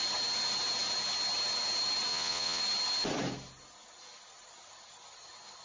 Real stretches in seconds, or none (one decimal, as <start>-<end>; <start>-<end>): 0.0-2.1; 2.6-5.6